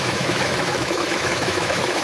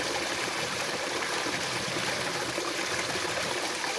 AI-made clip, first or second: first